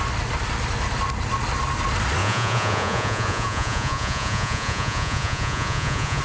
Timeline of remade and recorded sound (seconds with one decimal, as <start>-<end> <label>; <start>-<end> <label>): 0.0-2.2 recorded; 2.2-6.2 remade

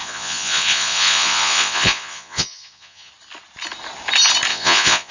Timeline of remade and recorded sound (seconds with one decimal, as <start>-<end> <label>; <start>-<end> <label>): 0.0-3.1 remade; 3.1-4.5 recorded; 4.5-5.1 remade

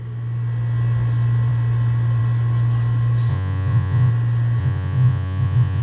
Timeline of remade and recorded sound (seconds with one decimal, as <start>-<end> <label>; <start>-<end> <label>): 0.0-3.3 recorded; 3.3-4.1 remade; 4.1-4.6 recorded; 4.6-5.8 remade

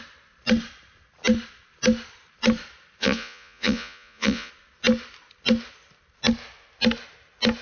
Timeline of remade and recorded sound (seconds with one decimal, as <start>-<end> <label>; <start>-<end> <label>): 0.0-3.0 recorded; 3.0-4.5 remade; 4.5-7.6 recorded

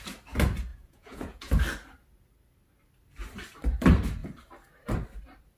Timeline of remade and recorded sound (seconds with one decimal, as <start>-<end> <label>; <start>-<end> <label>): 0.0-0.7 recorded; 0.7-1.5 remade; 1.5-5.6 recorded

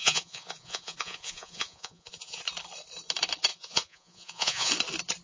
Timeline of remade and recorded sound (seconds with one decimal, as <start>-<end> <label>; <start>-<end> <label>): 0.0-2.4 remade; 2.4-3.5 recorded; 3.5-4.7 remade; 4.7-5.2 recorded

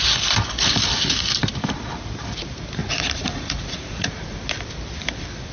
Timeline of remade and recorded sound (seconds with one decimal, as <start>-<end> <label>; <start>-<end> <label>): 0.0-2.8 recorded; 2.8-4.4 remade; 4.4-5.5 recorded

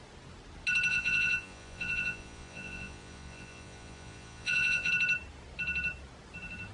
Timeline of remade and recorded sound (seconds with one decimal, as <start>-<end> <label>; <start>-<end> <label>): 0.0-0.9 recorded; 0.9-4.9 remade; 4.9-6.7 recorded